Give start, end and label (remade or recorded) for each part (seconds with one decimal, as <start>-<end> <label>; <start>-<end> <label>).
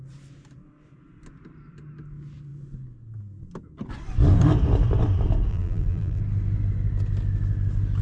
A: 0.0-5.5 recorded; 5.5-6.2 remade; 6.2-8.0 recorded